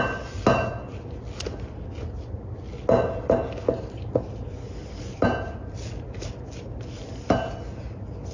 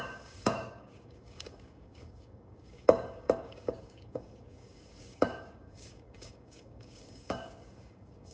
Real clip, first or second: first